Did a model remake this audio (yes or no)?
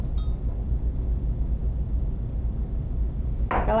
no